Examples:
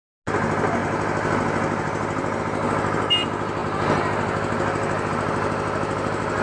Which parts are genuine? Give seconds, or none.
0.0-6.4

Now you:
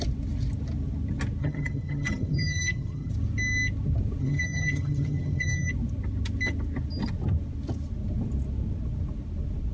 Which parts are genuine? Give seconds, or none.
0.0-1.4; 3.1-4.2; 5.7-9.7

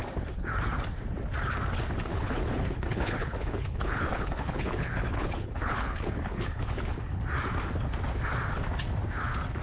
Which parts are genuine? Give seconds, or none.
0.0-2.1; 7.2-9.6

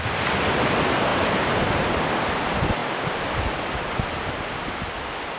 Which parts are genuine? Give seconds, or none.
0.0-1.1; 2.0-5.4

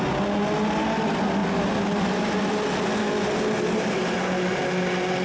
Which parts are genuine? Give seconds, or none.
0.0-5.2

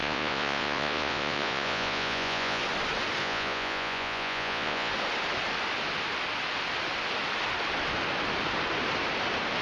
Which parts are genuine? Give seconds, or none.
2.6-3.2; 4.9-9.6

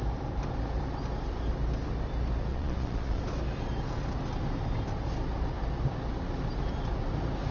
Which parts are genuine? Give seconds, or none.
0.0-2.5; 3.2-7.5

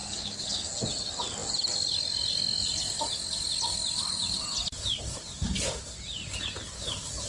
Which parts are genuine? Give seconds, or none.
0.7-7.3